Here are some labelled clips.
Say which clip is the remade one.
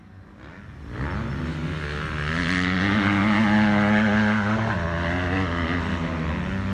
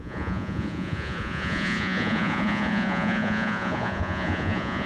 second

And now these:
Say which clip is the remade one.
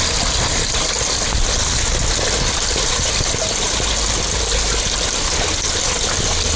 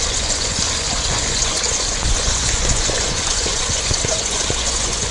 second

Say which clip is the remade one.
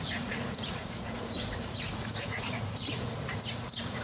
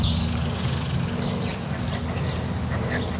first